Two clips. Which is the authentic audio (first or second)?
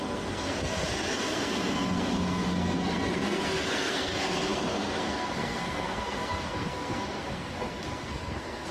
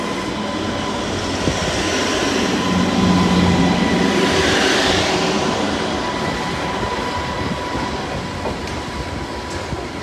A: second